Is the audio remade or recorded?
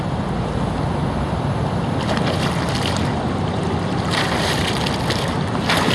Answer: recorded